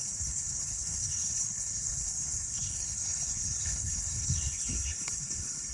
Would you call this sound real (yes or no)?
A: no